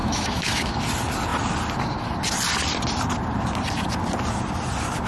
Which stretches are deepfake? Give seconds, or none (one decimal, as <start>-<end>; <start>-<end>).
0.0-0.8